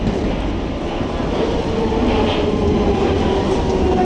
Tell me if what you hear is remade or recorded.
recorded